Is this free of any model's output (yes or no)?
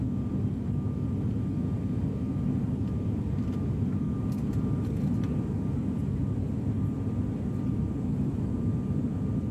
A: no